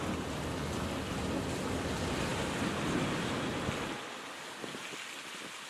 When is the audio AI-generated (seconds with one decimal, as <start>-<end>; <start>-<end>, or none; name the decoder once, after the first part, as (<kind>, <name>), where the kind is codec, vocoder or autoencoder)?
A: none